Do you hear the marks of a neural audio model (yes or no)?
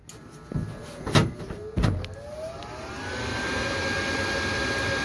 no